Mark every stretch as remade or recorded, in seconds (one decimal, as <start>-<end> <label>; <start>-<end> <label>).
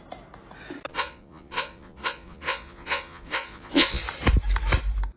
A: 0.0-0.9 recorded; 0.9-4.0 remade; 4.0-5.2 recorded